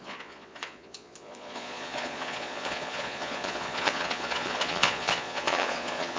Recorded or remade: remade